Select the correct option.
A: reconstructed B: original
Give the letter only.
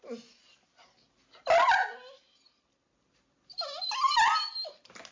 B